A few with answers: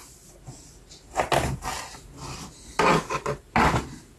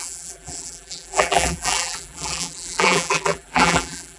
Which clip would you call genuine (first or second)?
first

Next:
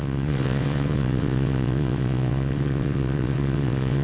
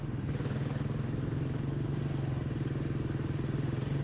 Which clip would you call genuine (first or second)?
second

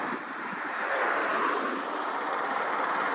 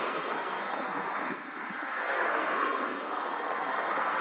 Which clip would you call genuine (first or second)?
first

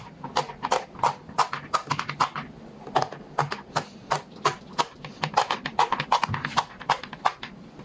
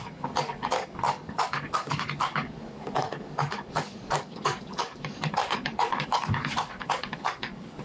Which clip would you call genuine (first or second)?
first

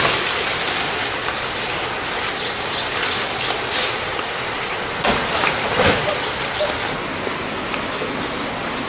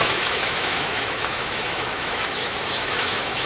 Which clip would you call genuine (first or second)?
first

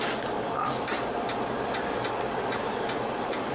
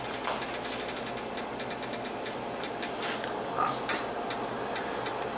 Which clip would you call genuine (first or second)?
second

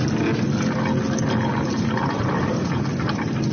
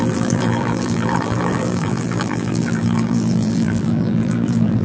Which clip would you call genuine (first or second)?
first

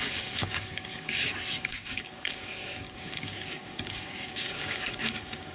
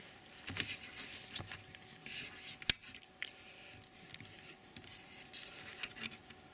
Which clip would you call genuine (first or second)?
second